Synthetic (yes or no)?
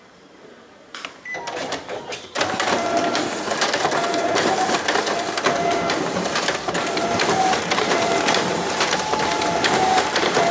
yes